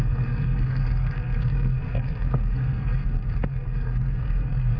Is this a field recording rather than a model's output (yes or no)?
no